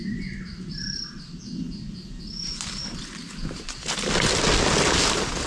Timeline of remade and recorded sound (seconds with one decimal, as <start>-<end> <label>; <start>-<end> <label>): 0.0-1.6 remade; 1.6-4.9 recorded; 4.9-5.5 remade